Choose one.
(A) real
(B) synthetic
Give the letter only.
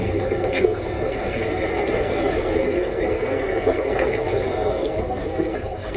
B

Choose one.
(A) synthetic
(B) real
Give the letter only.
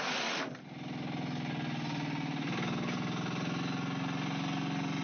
B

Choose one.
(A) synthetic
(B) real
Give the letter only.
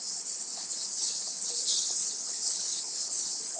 A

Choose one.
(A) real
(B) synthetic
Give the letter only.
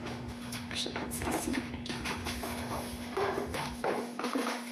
B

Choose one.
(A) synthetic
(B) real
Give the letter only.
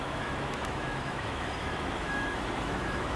A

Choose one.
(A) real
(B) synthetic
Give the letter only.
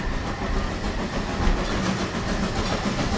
A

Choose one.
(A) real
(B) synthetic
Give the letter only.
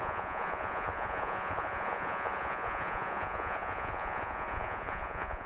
B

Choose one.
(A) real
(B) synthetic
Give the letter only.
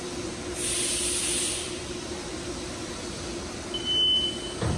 A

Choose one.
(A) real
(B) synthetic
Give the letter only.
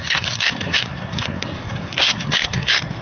B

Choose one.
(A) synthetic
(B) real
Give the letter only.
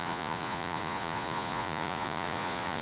A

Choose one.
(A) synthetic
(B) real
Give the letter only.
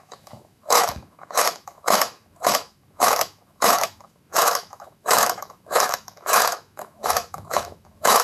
A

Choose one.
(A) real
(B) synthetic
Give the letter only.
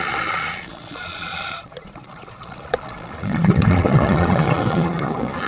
B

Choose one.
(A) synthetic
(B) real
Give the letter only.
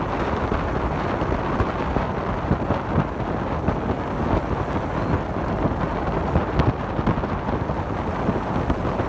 B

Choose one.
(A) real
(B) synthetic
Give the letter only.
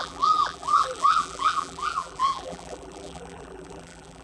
B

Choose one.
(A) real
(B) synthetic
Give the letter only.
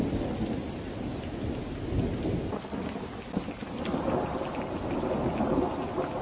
A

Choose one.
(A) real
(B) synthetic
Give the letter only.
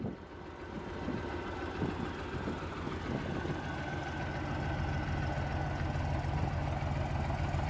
A